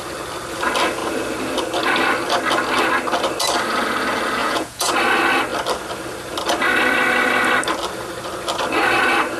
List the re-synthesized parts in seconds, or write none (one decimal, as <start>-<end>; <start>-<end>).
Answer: 4.4-4.9